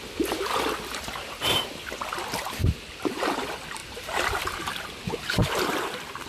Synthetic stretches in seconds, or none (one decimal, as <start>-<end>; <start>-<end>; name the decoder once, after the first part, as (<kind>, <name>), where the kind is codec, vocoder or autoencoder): 3.8-4.6 (vocoder, BigVGAN v2)